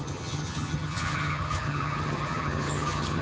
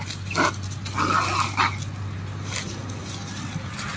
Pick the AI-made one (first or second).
first